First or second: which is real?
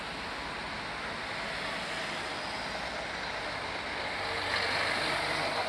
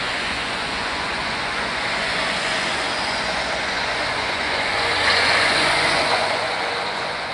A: first